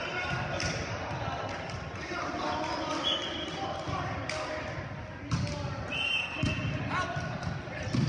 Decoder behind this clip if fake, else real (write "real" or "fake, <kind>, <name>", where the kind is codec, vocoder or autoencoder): real